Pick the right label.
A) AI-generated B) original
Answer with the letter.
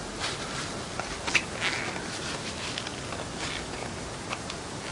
B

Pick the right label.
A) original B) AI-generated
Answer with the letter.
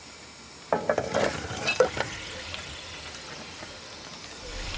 A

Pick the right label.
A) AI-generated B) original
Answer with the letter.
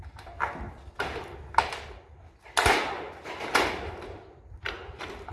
B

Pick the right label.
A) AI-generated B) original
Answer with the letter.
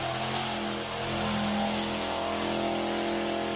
B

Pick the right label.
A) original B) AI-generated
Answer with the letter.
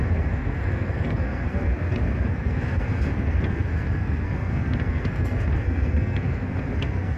B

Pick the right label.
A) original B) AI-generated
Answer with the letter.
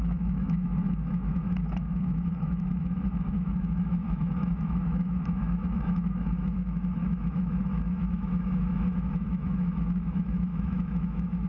B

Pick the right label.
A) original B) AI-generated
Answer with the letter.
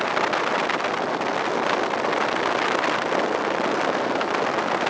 A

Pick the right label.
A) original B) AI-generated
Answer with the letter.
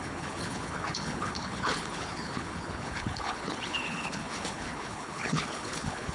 B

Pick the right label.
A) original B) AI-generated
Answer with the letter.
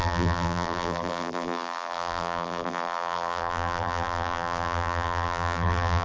B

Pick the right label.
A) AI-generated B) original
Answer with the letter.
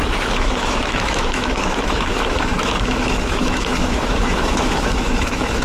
A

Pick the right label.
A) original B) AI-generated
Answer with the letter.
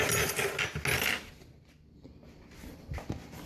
A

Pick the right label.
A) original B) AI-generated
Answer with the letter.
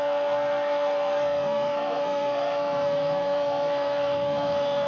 B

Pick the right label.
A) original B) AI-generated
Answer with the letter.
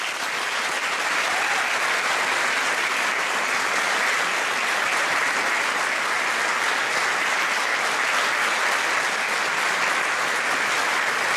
A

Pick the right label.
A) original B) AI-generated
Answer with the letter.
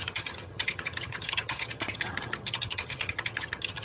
B